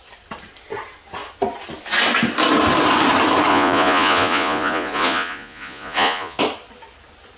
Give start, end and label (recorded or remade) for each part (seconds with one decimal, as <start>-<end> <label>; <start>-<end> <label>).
0.0-3.5 recorded; 3.5-6.4 remade; 6.4-7.4 recorded